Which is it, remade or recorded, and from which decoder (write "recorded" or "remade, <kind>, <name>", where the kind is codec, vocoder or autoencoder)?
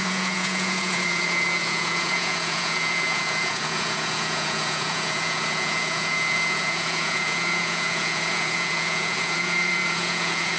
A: remade, vocoder, Vocos